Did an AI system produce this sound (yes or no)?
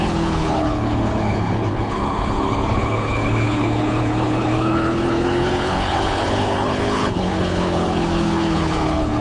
yes